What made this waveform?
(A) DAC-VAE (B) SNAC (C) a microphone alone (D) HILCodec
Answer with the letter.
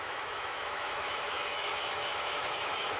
A